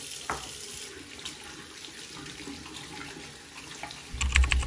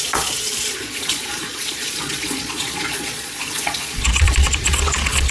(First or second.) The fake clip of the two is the second